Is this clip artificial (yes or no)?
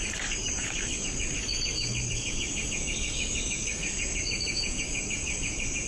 yes